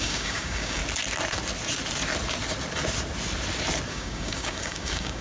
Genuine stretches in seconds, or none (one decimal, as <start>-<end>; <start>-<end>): 0.8-3.9